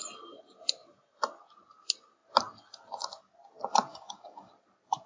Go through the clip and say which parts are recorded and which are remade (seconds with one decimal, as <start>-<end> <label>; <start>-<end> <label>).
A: 0.0-3.9 recorded; 3.9-4.5 remade; 4.5-5.1 recorded